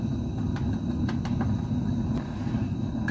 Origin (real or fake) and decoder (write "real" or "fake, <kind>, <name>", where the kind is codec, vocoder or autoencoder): real